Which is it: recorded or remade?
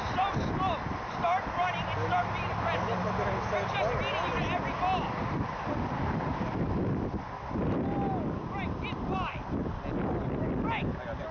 recorded